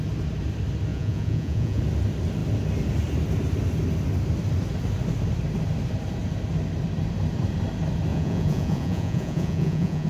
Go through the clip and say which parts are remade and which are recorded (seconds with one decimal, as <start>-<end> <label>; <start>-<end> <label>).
0.0-0.9 recorded; 0.9-1.8 remade; 1.8-8.1 recorded; 8.1-10.1 remade